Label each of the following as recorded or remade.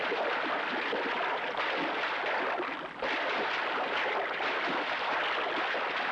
recorded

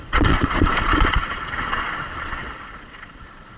remade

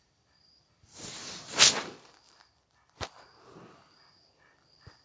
remade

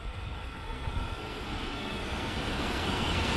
remade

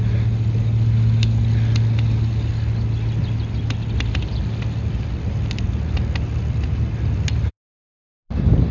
recorded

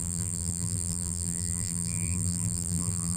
remade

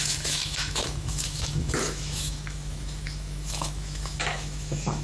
remade